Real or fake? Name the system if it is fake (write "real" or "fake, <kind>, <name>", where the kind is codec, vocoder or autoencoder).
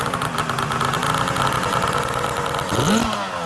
real